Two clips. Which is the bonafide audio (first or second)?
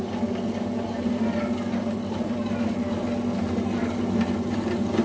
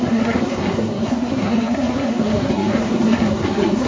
first